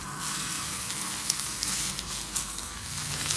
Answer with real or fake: fake